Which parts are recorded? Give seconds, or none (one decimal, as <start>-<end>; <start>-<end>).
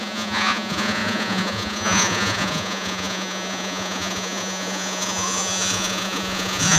none